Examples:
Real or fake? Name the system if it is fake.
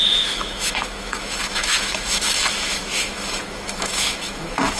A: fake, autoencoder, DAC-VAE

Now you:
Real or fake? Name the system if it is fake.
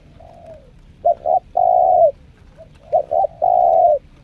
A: real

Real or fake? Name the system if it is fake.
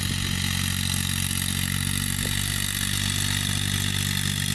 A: real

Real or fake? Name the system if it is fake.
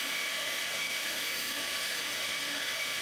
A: fake, autoencoder, DAC-VAE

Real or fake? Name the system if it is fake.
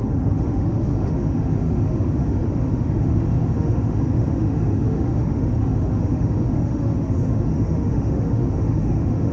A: fake, autoencoder, DAC-VAE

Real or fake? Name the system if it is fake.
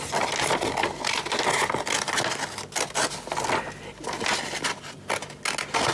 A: real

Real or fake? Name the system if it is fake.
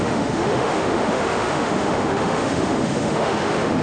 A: fake, autoencoder, DAC-VAE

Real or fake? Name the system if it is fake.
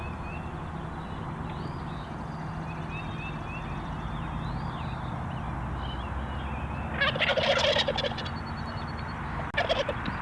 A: real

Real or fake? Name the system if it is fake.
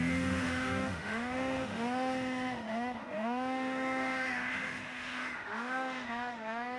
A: fake, autoencoder, DAC-VAE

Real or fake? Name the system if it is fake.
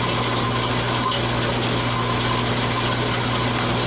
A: real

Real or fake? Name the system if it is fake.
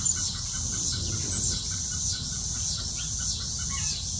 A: real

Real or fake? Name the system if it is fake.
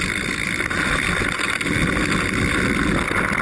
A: real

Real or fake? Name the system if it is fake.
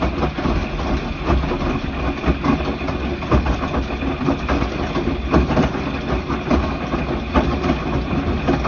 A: real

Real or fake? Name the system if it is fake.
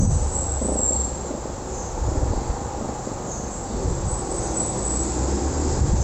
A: real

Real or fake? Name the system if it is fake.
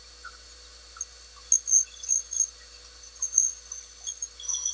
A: real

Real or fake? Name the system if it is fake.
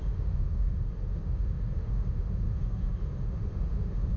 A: fake, autoencoder, DAC-VAE